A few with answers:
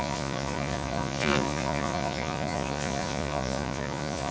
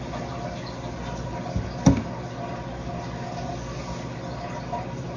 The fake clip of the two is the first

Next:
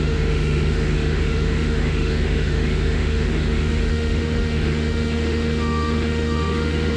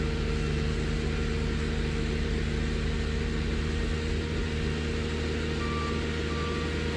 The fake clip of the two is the first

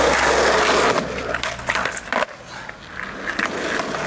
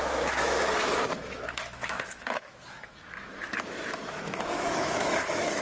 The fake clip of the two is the second